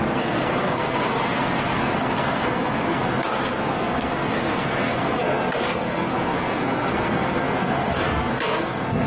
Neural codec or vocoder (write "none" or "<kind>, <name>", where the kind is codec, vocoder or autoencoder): codec, SNAC